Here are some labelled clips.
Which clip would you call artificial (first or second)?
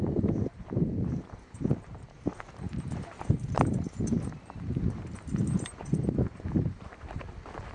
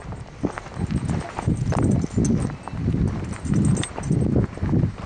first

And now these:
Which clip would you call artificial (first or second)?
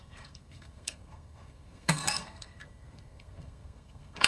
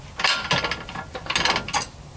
first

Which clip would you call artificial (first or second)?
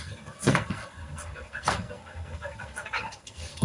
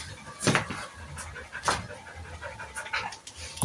first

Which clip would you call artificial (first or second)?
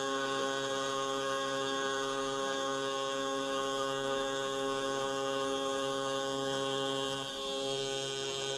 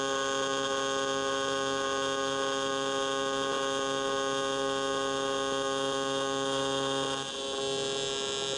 first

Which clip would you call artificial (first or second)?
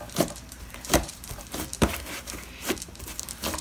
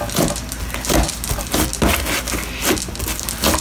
first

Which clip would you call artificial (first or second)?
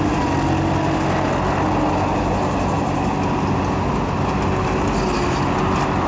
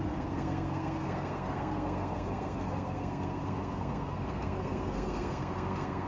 second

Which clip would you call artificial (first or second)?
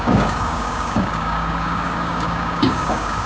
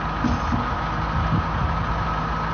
first